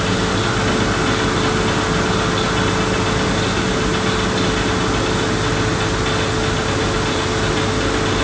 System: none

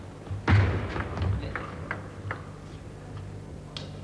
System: none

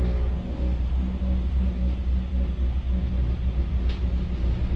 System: none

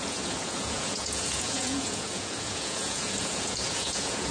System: vocoder, Vocos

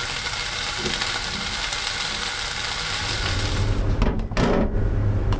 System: none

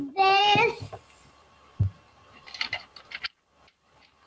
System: vocoder, BigVGAN v2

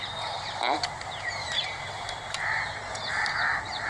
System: vocoder, BigVGAN v2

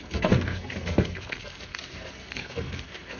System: codec, SNAC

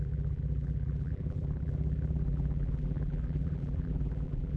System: vocoder, BigVGAN v2